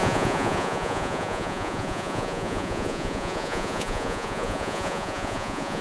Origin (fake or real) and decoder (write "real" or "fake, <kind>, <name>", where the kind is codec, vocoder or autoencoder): fake, vocoder, Vocos